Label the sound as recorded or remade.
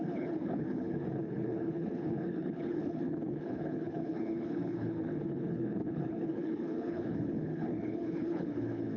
remade